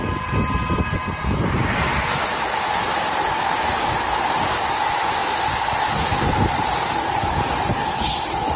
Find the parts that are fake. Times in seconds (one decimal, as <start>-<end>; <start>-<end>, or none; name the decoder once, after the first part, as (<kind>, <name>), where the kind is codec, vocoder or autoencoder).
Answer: none